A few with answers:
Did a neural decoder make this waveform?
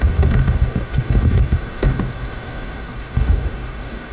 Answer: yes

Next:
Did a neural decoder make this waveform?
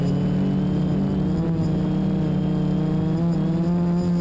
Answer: no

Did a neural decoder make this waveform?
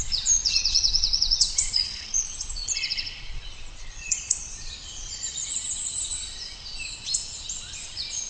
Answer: yes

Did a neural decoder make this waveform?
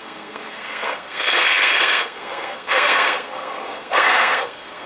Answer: yes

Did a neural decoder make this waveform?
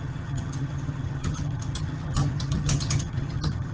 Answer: yes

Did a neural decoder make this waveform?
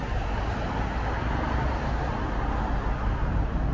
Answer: no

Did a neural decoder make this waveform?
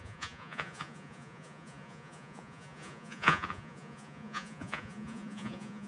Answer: yes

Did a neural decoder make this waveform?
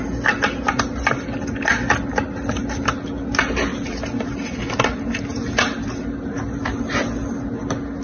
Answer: no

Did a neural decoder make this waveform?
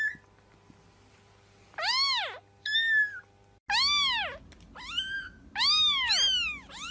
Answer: no